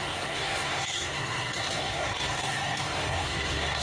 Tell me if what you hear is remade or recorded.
remade